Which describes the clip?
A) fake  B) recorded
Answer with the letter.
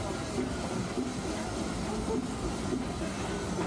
B